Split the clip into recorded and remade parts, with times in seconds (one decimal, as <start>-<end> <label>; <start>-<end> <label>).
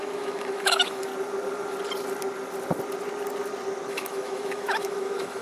0.0-1.1 remade; 1.1-3.9 recorded; 3.9-5.4 remade